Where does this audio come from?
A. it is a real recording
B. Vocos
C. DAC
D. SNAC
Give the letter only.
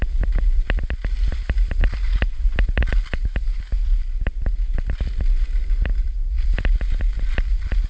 A